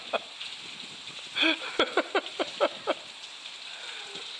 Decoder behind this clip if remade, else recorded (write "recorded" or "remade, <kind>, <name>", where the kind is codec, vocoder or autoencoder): recorded